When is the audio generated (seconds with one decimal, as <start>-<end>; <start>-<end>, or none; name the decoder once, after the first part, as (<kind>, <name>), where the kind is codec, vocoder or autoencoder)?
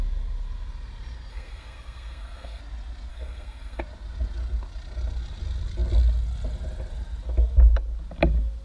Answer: 1.3-2.6 (codec, SNAC); 3.1-3.8